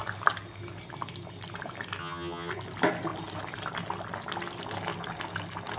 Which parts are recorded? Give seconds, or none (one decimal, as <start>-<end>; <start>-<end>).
0.0-2.0; 2.5-5.8